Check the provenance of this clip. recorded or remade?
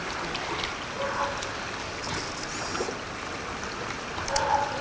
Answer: recorded